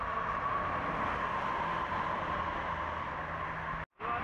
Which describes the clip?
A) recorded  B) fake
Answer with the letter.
A